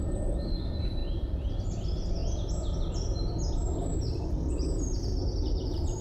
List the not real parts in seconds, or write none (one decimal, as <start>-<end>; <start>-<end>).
0.0-2.2; 3.5-5.1